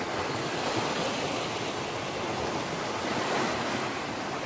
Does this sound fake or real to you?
real